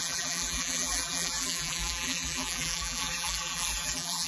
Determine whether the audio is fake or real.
fake